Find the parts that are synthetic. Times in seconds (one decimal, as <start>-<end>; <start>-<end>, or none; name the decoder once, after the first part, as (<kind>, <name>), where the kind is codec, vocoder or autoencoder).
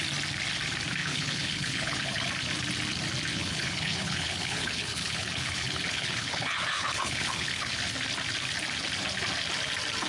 1.0-2.3 (codec, HILCodec); 3.3-7.8